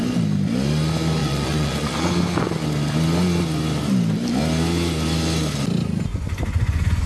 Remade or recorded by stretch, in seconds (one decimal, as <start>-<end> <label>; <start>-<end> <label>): 0.0-1.2 recorded; 1.2-2.1 remade; 2.1-6.1 recorded; 6.1-7.1 remade